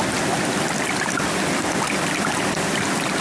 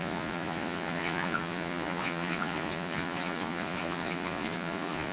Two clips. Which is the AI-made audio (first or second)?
second